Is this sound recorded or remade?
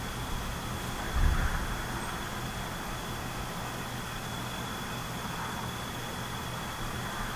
recorded